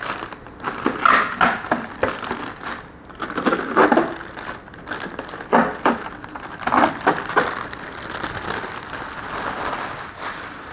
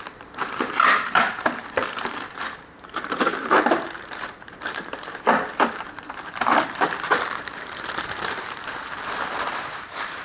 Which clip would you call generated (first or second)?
second